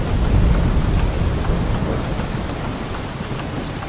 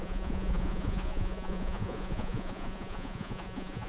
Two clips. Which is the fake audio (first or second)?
second